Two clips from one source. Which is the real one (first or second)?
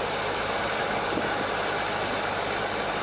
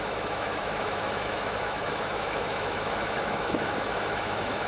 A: first